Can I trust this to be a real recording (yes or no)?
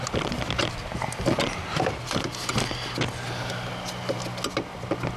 yes